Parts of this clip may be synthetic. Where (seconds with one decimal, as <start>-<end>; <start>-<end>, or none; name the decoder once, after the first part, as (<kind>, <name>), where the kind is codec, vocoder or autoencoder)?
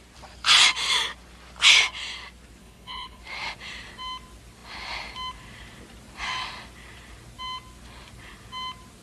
2.6-3.2 (codec, HILCodec)